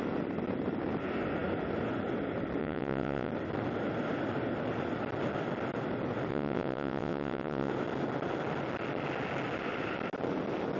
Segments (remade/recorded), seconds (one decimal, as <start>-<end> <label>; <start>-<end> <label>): 0.0-2.6 recorded; 2.6-3.3 remade; 3.3-6.3 recorded; 6.3-7.7 remade; 7.7-10.8 recorded